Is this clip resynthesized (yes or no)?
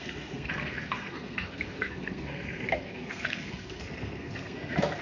yes